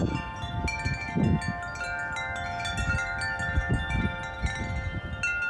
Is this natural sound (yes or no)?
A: yes